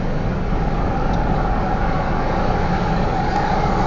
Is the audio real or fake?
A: fake